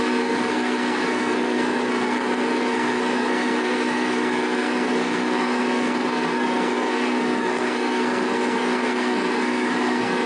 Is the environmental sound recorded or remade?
remade